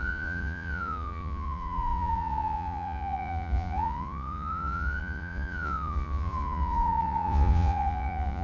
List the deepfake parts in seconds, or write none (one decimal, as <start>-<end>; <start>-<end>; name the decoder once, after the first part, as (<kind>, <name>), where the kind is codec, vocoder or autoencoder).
0.0-8.4 (vocoder, Vocos)